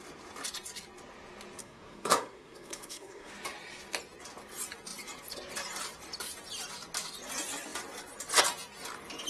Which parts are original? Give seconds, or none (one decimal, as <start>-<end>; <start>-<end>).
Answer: 0.0-1.6; 3.3-9.3